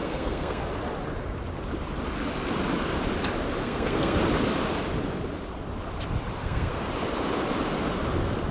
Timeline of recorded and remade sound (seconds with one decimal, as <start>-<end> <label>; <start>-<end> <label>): 0.0-0.6 remade; 0.6-3.6 recorded; 3.6-4.2 remade; 4.2-6.4 recorded; 6.4-6.9 remade; 6.9-8.5 recorded